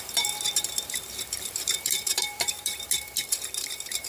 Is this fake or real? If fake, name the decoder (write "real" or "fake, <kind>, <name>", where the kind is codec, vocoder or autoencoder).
fake, vocoder, BigVGAN v2